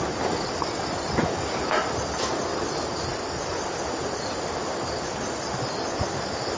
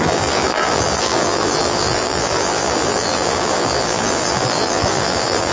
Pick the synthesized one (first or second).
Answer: second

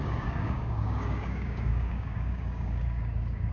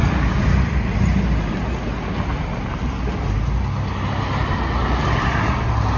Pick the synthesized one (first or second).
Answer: first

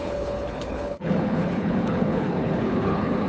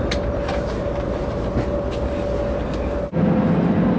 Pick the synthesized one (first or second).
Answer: first